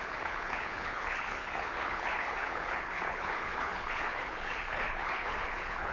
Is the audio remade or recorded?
remade